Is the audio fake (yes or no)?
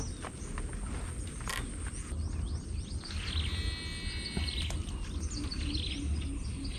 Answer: no